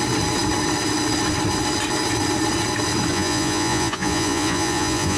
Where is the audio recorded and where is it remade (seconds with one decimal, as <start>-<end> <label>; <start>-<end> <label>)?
0.0-3.1 recorded; 3.1-5.2 remade